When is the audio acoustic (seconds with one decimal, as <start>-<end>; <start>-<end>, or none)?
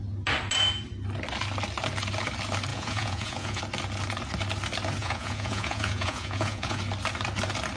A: 0.0-2.7; 3.6-5.0; 6.8-7.8